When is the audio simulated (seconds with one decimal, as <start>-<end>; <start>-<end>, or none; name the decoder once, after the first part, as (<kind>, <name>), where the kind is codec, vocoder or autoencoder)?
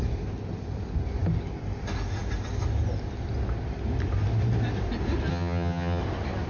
5.3-6.0 (vocoder, HiFi-GAN)